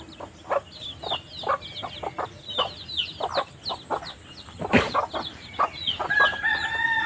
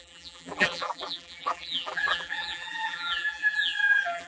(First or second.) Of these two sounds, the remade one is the second